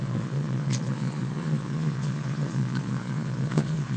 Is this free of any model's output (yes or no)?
no